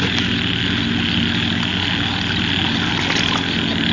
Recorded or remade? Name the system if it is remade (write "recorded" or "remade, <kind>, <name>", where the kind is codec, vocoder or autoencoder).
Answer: recorded